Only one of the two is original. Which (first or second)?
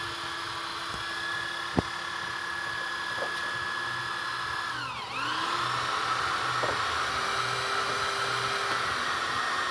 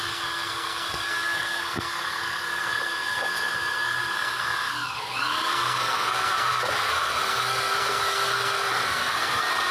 first